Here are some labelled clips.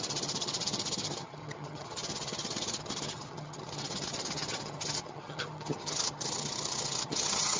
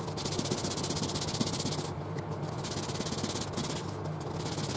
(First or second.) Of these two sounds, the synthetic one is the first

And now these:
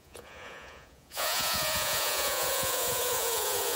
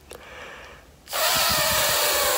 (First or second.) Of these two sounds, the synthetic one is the first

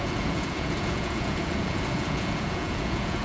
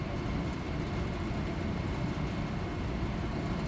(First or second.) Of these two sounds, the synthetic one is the first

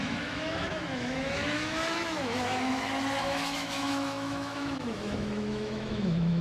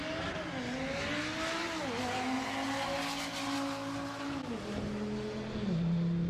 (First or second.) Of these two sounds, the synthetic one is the first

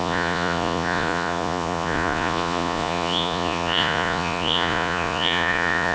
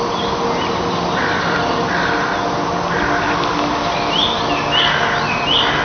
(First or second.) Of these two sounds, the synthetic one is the first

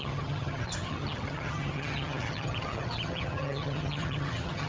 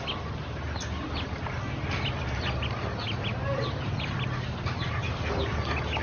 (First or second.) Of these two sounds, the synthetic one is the first